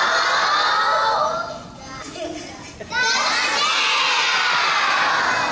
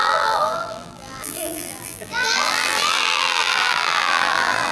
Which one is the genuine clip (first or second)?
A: first